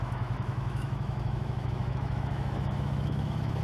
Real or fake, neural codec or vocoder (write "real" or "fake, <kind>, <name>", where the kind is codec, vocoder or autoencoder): fake, autoencoder, DAC-VAE